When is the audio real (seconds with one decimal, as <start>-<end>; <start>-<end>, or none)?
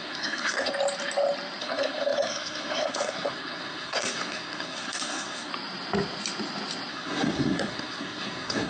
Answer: 0.7-1.6; 5.5-6.9